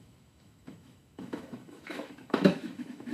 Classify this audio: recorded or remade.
remade